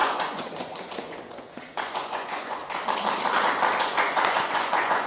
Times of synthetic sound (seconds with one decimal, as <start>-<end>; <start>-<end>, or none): 0.0-2.6; 3.8-5.1